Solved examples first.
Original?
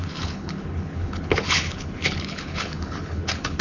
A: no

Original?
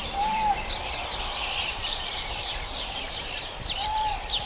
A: no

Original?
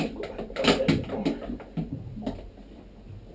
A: yes